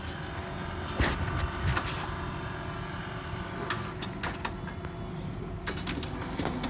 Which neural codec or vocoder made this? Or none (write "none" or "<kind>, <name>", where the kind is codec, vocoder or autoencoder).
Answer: none